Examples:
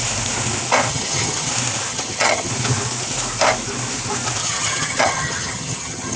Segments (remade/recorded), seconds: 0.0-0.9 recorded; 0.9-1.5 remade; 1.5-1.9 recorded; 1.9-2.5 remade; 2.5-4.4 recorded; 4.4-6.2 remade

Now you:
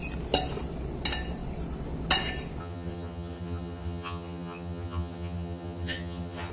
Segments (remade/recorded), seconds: 0.0-2.6 recorded; 2.6-6.5 remade

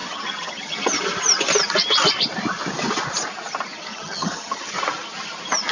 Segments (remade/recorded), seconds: 0.0-1.0 remade; 1.0-3.9 recorded; 3.9-4.8 remade; 4.8-5.7 recorded

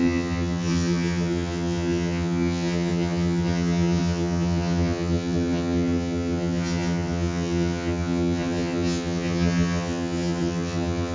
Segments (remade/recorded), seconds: 0.0-11.1 remade

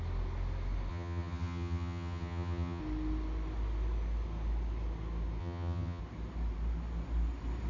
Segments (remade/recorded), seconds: 0.0-0.9 recorded; 0.9-2.8 remade; 2.8-5.4 recorded; 5.4-6.0 remade; 6.0-7.7 recorded

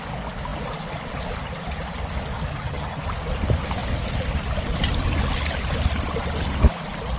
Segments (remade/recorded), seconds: 0.0-2.5 recorded; 2.5-3.0 remade; 3.0-7.2 recorded

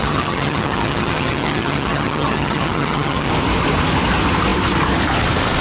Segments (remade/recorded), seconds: 0.0-3.3 remade; 3.3-5.6 recorded

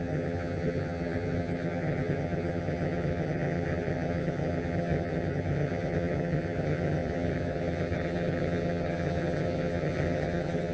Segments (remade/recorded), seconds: 0.0-10.7 remade